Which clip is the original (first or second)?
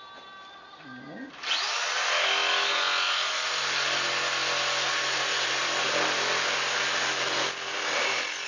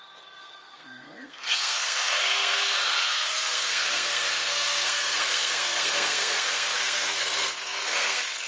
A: first